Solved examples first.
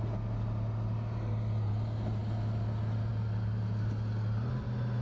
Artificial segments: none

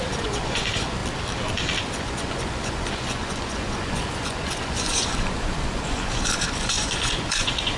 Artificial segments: 0.0-1.0 (vocoder, Vocos); 1.8-7.8